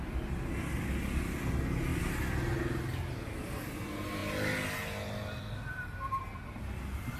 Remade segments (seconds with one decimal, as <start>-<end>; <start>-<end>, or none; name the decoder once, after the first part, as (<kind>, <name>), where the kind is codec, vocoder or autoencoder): none